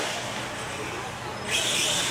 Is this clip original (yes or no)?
yes